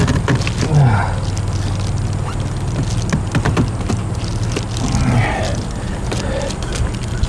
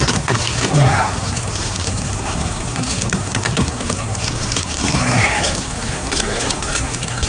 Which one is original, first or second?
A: first